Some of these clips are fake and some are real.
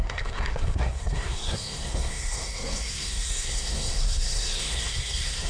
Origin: fake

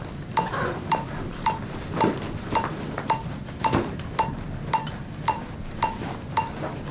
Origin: fake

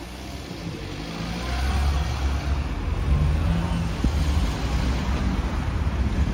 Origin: real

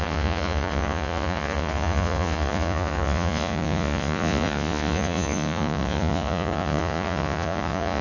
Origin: fake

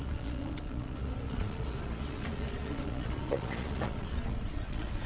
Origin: fake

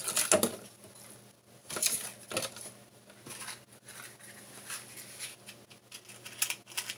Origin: real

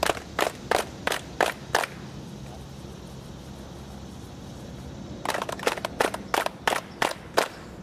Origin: real